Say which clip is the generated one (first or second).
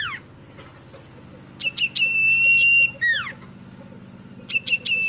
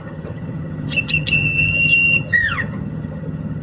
second